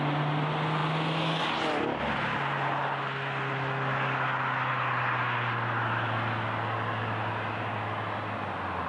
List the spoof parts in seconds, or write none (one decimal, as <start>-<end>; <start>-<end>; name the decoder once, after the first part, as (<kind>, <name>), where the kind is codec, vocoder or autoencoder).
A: none